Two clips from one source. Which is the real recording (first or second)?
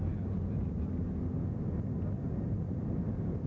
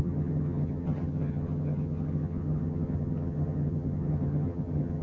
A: first